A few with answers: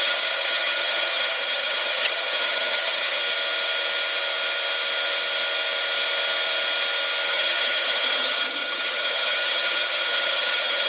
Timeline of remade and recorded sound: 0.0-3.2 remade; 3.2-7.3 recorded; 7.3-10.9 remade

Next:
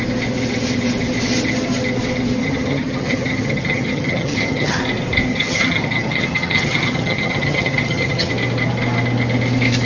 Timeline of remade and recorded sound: 0.0-2.4 recorded; 2.4-4.8 remade; 4.8-5.3 recorded; 5.3-8.3 remade; 8.3-9.9 recorded

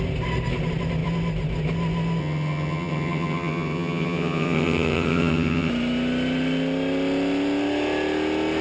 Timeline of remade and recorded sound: 0.0-2.2 recorded; 2.2-5.7 remade; 5.7-8.6 recorded

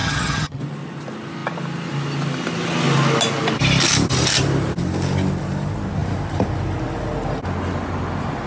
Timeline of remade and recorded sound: 0.0-0.6 remade; 0.6-8.5 recorded

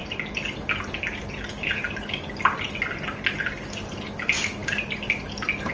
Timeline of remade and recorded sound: 0.0-5.7 recorded

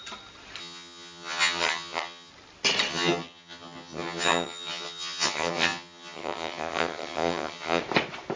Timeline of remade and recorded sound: 0.0-0.6 recorded; 0.6-2.3 remade; 2.3-2.9 recorded; 2.9-7.8 remade; 7.8-8.4 recorded

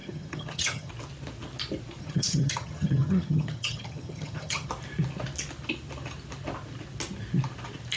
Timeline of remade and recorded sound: 0.0-0.9 remade; 0.9-2.0 recorded; 2.0-4.7 remade; 4.7-8.0 recorded

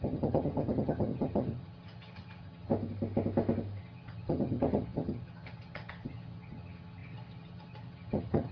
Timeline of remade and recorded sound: 0.0-2.7 remade; 2.7-3.8 recorded; 3.8-8.5 remade